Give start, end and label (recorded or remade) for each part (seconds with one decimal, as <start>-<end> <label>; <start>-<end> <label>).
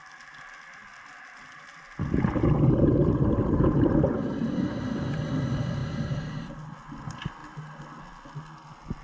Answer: 0.0-9.0 recorded